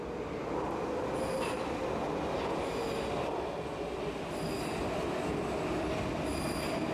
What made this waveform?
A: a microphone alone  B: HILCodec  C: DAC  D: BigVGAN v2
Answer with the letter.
A